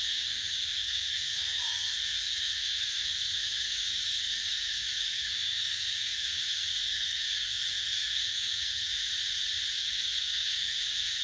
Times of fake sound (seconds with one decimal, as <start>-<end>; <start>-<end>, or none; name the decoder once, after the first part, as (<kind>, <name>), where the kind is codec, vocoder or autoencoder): 0.0-9.1 (codec, SNAC); 9.8-11.2